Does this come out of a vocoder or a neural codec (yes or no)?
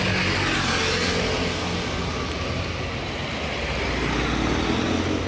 no